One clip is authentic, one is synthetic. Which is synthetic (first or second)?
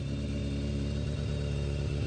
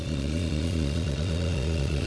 second